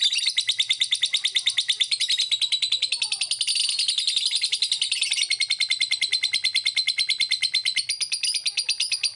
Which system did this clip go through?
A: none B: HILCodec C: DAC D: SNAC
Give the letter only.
A